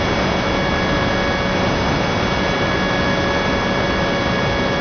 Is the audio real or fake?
real